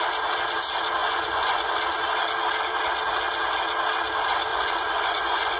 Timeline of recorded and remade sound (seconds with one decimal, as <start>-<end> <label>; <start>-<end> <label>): 0.0-1.0 recorded; 1.0-1.8 remade; 1.8-4.5 recorded; 4.5-5.6 remade